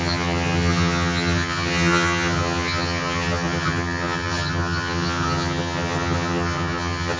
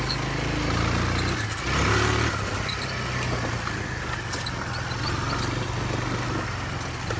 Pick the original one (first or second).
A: second